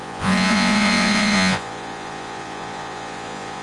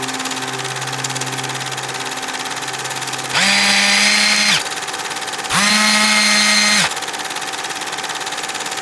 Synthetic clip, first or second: first